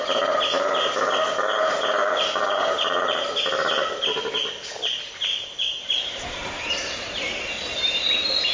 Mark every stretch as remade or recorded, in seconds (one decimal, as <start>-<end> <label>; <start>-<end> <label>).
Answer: 0.0-2.0 recorded; 2.0-3.2 remade; 3.2-5.3 recorded; 5.3-7.5 remade; 7.5-8.5 recorded